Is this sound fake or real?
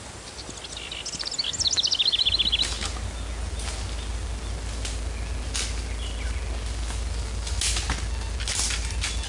real